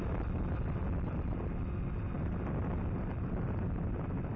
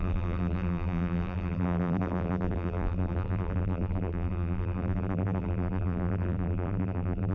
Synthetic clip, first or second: second